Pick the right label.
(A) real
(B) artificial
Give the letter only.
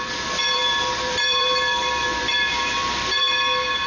B